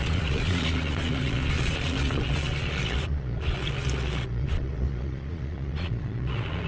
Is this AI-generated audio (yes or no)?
yes